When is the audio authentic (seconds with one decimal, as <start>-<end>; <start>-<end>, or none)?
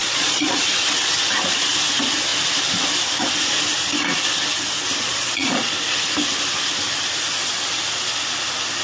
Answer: 0.6-5.0; 5.7-8.8